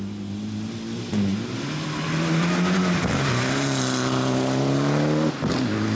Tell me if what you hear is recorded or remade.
recorded